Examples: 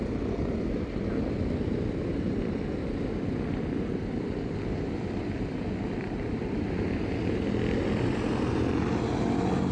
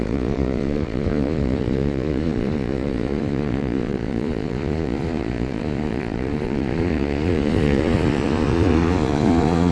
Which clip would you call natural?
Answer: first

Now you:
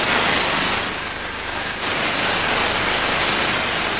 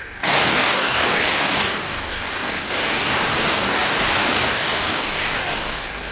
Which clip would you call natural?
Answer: first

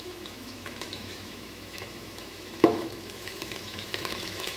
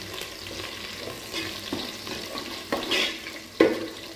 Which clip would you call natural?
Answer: second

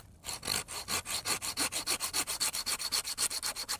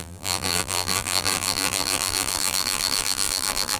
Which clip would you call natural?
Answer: first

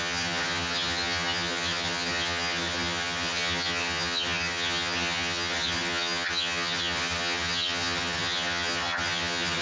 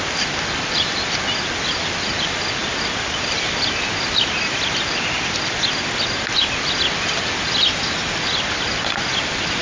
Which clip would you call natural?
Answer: second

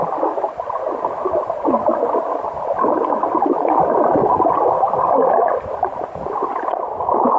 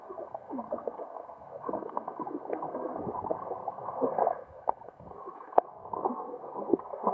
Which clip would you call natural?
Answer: first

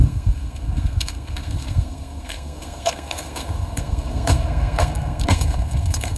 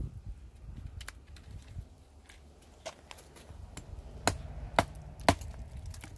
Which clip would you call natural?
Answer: second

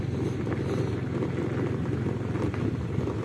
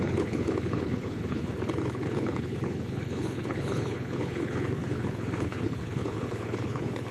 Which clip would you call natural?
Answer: first